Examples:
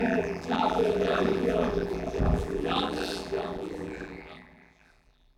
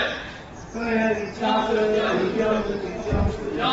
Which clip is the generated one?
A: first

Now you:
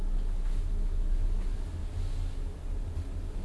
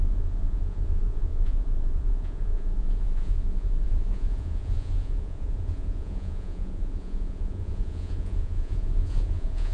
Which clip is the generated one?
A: second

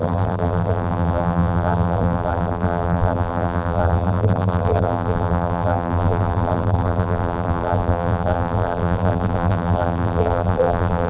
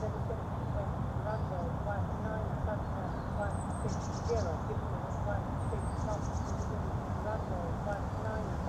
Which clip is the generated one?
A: first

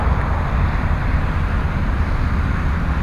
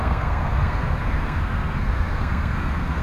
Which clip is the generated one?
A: second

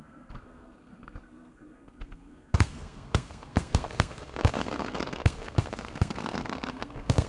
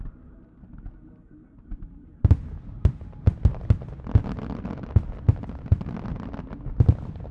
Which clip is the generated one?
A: first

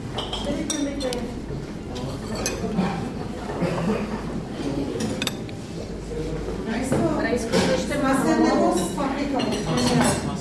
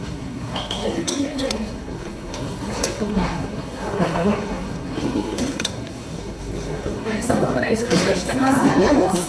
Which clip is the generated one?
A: second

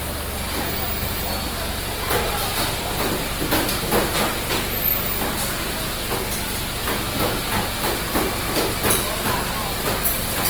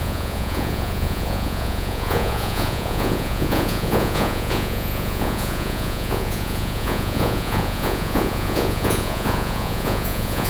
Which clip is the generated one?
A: second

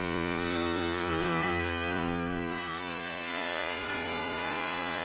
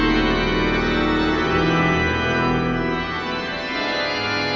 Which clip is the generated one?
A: first